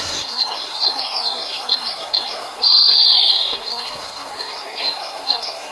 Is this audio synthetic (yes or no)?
yes